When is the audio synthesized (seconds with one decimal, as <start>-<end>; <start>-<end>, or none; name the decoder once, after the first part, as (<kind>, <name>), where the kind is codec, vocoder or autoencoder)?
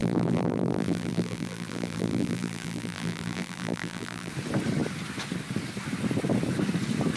0.0-4.3 (vocoder, BigVGAN v2)